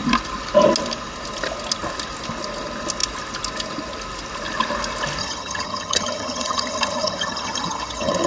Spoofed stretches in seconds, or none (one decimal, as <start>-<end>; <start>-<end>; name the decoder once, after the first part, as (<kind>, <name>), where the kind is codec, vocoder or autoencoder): 5.2-8.3 (vocoder, HiFi-GAN)